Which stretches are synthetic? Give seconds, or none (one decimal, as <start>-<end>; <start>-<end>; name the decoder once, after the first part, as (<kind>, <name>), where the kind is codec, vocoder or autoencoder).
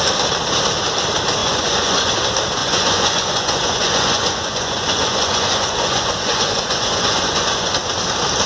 1.4-2.1 (vocoder, Vocos); 2.6-7.7